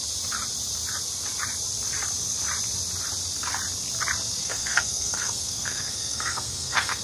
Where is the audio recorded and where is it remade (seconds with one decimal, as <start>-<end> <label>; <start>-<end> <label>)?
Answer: 0.0-4.4 recorded; 4.4-7.0 remade